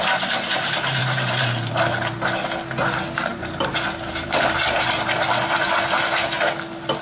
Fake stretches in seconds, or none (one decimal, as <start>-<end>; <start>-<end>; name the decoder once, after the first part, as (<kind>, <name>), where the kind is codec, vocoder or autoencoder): 1.0-1.7 (vocoder, BigVGAN v2); 3.3-5.3